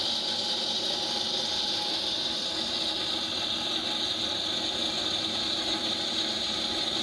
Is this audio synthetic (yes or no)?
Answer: no